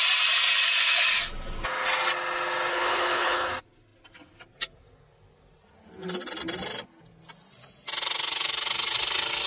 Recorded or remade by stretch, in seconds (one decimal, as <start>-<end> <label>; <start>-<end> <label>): 0.0-2.7 recorded; 2.7-3.5 remade; 3.5-9.5 recorded